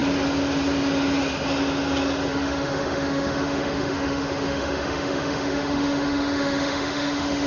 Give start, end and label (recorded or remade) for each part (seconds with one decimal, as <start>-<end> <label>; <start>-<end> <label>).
0.0-2.3 recorded; 2.3-7.5 remade